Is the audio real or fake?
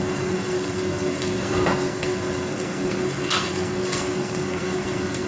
fake